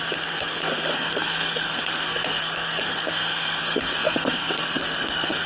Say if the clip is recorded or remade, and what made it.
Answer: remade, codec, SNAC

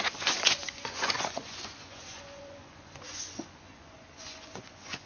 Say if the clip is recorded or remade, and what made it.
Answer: remade, vocoder, Vocos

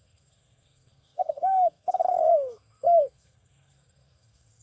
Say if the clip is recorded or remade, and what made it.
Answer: remade, codec, SNAC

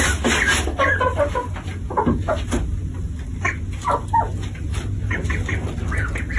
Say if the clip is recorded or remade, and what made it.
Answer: recorded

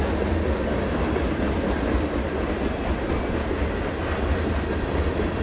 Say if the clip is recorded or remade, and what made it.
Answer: recorded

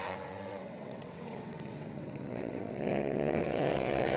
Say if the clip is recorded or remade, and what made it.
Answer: remade, vocoder, WaveNeXt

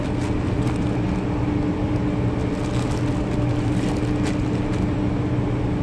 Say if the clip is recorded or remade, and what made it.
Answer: recorded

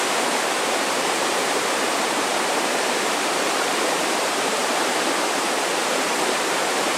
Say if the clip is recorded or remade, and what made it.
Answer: remade, vocoder, BigVGAN v2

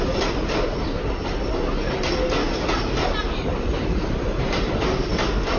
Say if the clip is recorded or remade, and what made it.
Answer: recorded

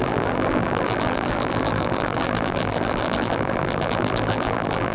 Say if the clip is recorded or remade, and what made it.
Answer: remade, vocoder, BigVGAN v2